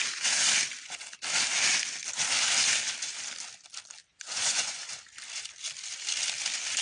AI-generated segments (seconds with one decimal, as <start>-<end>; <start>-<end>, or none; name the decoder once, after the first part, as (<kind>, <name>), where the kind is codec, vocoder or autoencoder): 4.0-4.8 (vocoder, Vocos)